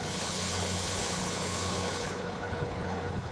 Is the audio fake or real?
fake